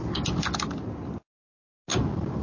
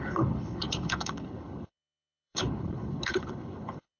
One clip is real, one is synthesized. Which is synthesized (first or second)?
second